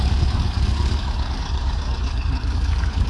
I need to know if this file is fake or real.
fake